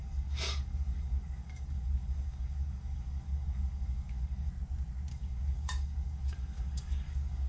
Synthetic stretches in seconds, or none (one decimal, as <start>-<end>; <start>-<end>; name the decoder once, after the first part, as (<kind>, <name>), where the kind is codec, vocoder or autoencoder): 0.0-4.5 (codec, DAC); 5.1-7.5